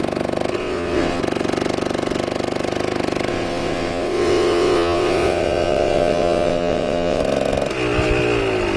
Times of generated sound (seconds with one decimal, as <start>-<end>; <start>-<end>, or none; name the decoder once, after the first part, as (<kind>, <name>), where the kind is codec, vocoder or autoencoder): 0.6-1.2 (vocoder, WaveNeXt); 3.3-7.2